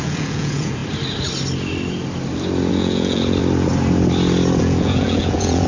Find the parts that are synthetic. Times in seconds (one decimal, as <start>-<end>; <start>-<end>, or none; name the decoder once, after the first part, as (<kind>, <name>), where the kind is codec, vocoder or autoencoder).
0.0-0.8 (vocoder, Vocos); 2.7-3.4; 4.6-5.7

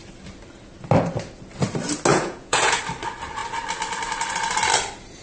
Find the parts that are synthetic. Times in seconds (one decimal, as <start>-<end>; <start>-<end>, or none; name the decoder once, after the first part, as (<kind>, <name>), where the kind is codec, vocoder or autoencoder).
2.1-2.8 (vocoder, Vocos)

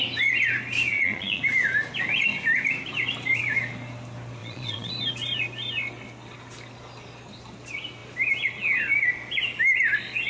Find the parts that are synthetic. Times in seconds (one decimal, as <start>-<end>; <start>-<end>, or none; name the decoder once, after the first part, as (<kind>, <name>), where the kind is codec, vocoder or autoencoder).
0.9-1.4 (vocoder, Vocos); 4.4-4.9